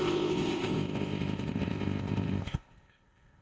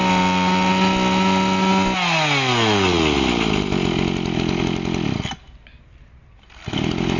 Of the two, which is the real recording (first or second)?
second